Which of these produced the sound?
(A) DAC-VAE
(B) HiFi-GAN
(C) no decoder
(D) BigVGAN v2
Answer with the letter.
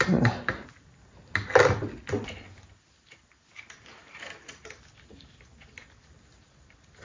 C